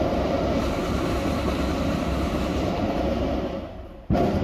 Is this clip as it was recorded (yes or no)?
yes